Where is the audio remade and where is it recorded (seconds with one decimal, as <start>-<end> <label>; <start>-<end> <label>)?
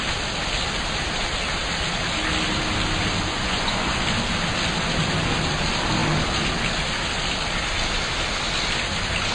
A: 0.0-3.3 recorded; 3.3-4.0 remade; 4.0-9.3 recorded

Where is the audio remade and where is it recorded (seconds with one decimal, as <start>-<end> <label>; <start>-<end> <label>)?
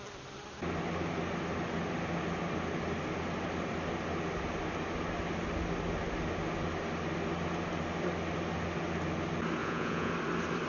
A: 0.0-9.6 recorded; 9.6-10.1 remade; 10.1-10.7 recorded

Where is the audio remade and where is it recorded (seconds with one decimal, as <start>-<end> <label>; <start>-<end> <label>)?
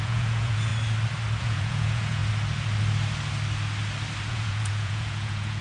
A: 0.0-0.7 remade; 0.7-1.4 recorded; 1.4-2.2 remade; 2.2-4.3 recorded; 4.3-5.6 remade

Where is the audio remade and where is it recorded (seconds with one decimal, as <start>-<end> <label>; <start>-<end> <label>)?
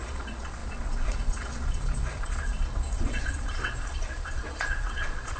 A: 0.0-5.4 remade